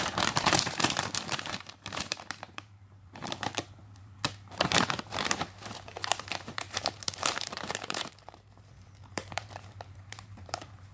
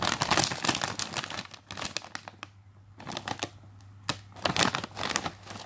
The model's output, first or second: first